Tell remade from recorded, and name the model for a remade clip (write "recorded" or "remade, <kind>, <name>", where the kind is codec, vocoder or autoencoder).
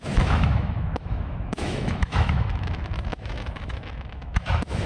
remade, autoencoder, DAC-VAE